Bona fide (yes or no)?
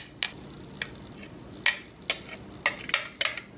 yes